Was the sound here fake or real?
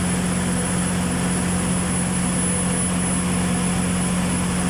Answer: real